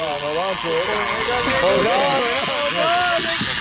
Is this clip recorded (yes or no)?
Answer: yes